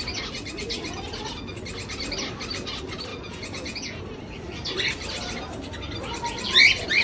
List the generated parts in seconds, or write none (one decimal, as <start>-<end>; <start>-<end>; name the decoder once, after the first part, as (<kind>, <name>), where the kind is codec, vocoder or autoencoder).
3.1-4.0 (vocoder, Vocos)

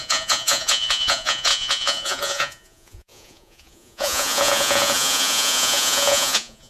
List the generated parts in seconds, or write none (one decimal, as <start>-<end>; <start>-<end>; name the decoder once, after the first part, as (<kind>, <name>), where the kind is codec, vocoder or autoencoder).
0.0-6.7 (vocoder, Vocos)

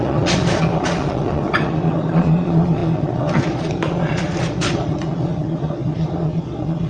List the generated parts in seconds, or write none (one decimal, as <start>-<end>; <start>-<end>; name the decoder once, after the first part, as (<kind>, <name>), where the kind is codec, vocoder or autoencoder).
0.0-6.9 (vocoder, Vocos)

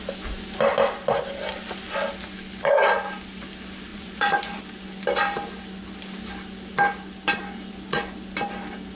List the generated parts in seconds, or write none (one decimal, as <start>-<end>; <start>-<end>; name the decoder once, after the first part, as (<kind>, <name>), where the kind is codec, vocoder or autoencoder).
3.9-4.6 (vocoder, Vocos)

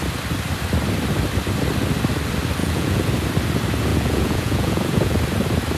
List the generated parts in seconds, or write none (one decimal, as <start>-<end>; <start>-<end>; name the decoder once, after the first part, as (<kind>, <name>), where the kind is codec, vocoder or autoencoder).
2.6-3.1 (vocoder, Vocos); 3.9-5.2

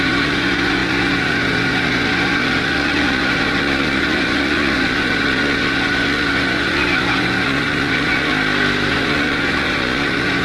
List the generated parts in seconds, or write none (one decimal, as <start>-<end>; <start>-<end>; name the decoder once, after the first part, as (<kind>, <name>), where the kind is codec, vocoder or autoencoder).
0.0-8.3 (vocoder, Vocos); 8.9-10.4

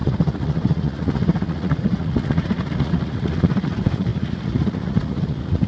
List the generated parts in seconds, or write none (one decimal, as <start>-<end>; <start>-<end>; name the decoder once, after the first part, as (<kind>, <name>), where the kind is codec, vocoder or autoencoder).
0.0-5.7 (vocoder, Vocos)

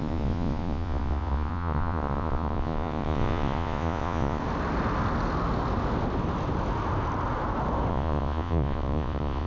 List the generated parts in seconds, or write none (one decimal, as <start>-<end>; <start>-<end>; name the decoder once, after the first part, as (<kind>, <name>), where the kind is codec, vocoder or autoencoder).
0.0-4.4 (vocoder, Vocos); 7.9-9.5